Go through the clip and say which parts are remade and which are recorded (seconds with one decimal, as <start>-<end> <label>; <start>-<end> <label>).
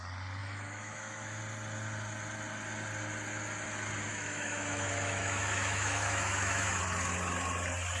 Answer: 0.0-0.4 recorded; 0.4-1.4 remade; 1.4-4.1 recorded; 4.1-6.8 remade; 6.8-8.0 recorded